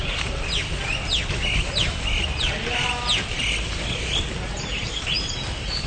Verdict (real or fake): real